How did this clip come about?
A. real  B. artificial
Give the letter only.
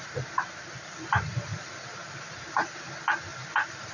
A